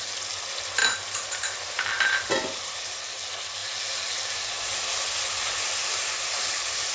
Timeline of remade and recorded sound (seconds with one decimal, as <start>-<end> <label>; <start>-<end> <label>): 0.0-0.8 recorded; 0.8-3.0 remade; 3.0-3.6 recorded; 3.6-4.5 remade; 4.5-5.8 recorded; 5.8-6.9 remade